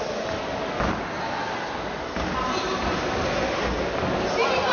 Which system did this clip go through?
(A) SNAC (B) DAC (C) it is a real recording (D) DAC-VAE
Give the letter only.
C